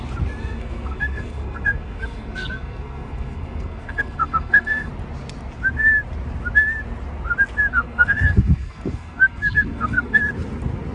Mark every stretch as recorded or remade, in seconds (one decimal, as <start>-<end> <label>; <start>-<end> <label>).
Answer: 0.0-0.4 recorded; 0.4-4.9 remade; 4.9-7.7 recorded; 7.7-10.2 remade; 10.2-10.9 recorded